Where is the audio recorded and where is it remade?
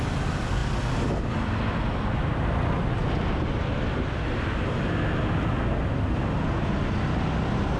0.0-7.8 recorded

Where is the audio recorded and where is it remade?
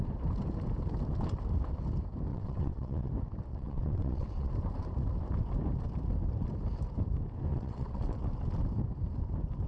0.0-2.3 recorded; 2.3-3.1 remade; 3.1-3.5 recorded; 3.5-4.5 remade; 4.5-7.5 recorded; 7.5-8.2 remade; 8.2-9.7 recorded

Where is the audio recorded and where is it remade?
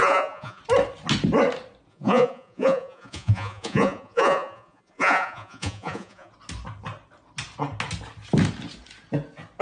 0.0-0.6 remade; 0.6-1.9 recorded; 1.9-6.3 remade; 6.3-9.6 recorded